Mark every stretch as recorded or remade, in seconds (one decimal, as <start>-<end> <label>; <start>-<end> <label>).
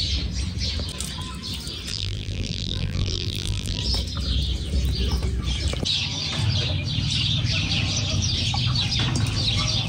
0.0-1.9 recorded; 1.9-3.8 remade; 3.8-9.9 recorded